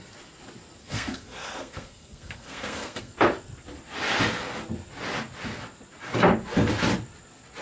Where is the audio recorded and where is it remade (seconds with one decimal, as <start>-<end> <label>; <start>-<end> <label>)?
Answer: 0.0-0.8 recorded; 0.8-3.1 remade; 3.1-7.6 recorded